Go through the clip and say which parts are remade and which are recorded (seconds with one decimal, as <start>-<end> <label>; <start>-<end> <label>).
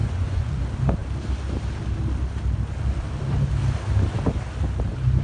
0.0-0.6 remade; 0.6-5.2 recorded